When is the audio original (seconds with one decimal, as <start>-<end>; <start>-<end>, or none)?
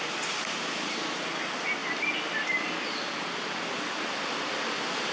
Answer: 0.0-5.1